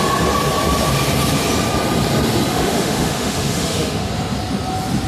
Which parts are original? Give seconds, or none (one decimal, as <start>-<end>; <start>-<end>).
0.0-2.5; 4.1-5.1